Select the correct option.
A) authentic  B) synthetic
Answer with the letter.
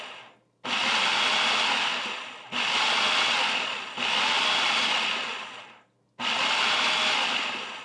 A